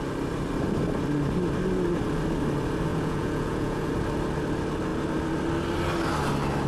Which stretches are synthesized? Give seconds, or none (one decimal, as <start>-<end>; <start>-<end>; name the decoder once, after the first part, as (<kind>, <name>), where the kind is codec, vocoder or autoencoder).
2.9-3.9 (vocoder, Vocos)